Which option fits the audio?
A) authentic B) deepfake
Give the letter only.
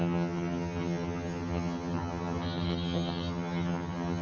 B